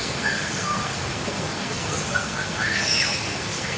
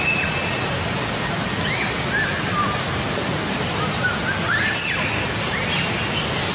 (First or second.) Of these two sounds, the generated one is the first